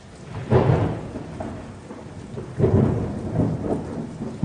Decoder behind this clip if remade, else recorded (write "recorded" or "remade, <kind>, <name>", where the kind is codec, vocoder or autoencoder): recorded